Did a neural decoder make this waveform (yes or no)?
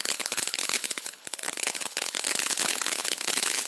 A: yes